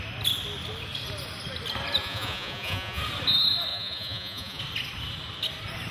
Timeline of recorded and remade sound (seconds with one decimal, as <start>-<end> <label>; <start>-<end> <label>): 0.0-2.0 recorded; 2.0-3.0 remade; 3.0-3.7 recorded; 3.7-4.6 remade; 4.6-5.9 recorded